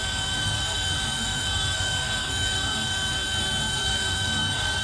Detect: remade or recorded remade